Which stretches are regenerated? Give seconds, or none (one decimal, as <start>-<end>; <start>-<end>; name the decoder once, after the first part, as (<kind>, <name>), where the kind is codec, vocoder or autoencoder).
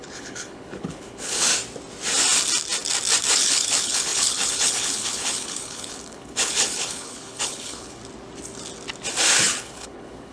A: 0.0-1.5 (codec, HILCodec); 3.3-8.0; 9.4-10.3